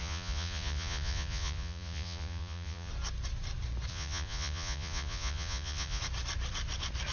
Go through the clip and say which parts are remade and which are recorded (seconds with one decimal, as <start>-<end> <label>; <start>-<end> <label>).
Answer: 0.0-2.9 remade; 2.9-3.9 recorded; 3.9-6.0 remade; 6.0-7.1 recorded